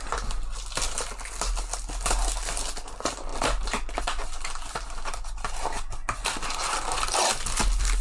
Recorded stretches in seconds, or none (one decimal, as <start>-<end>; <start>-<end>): 0.0-8.0